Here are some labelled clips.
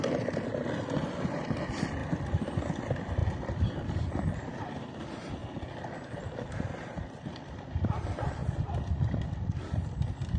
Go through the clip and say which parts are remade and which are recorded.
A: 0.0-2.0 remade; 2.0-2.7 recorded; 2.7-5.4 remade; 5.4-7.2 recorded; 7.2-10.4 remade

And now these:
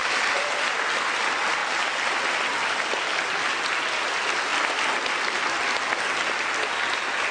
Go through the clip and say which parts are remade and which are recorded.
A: 0.0-1.2 recorded; 1.2-1.6 remade; 1.6-3.9 recorded; 3.9-4.5 remade; 4.5-6.2 recorded; 6.2-7.3 remade